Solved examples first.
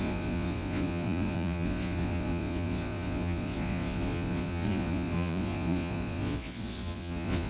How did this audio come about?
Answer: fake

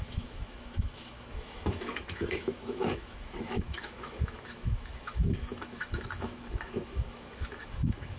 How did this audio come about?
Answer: fake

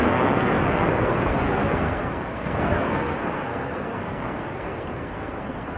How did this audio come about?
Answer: fake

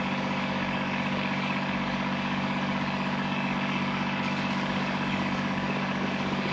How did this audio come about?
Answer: fake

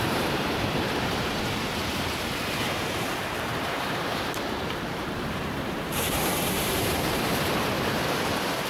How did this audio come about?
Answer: fake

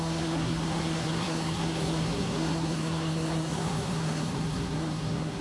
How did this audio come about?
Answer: fake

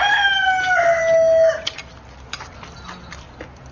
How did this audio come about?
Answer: real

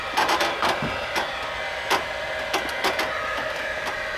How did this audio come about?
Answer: real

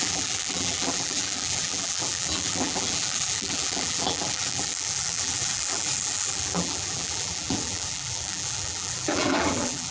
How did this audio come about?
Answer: fake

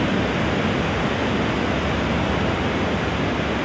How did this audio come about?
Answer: real